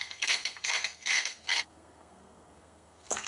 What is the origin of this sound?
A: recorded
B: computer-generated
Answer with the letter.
B